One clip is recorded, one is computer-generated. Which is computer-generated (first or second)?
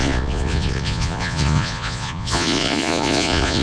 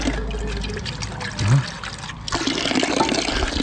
first